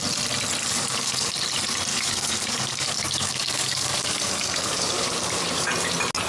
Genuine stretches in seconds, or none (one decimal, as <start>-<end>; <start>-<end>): 0.0-0.6; 1.3-1.9; 5.7-6.3